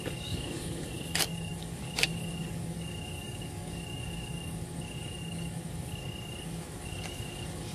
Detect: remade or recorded remade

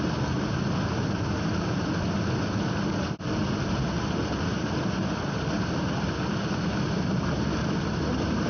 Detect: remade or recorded recorded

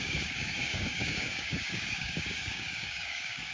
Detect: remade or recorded remade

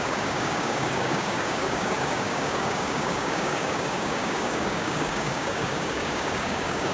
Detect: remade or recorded remade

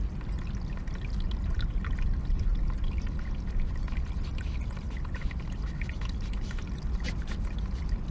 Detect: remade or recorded recorded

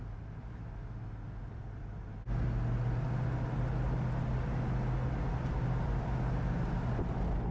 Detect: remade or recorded recorded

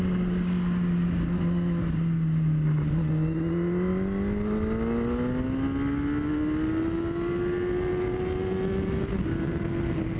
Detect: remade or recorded recorded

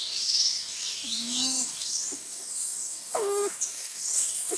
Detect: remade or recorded remade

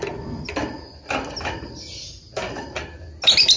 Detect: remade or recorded recorded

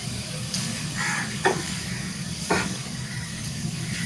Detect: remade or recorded remade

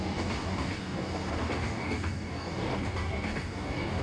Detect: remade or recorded remade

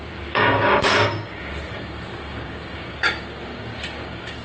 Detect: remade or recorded remade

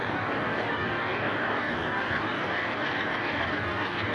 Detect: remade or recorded remade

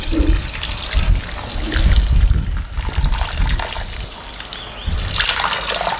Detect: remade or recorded recorded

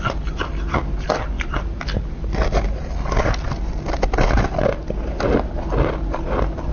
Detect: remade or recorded recorded